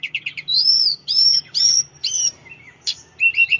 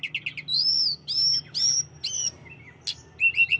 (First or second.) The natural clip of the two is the second